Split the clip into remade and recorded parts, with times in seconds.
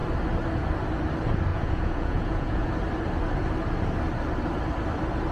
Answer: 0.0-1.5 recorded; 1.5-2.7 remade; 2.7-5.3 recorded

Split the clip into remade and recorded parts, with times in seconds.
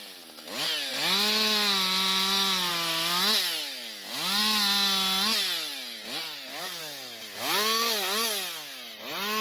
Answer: 0.0-9.4 recorded